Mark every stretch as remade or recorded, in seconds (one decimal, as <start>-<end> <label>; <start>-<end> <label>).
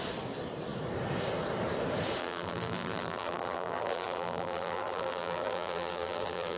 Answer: 0.0-2.2 recorded; 2.2-6.6 remade